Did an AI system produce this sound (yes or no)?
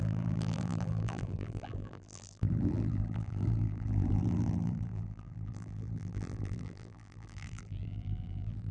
yes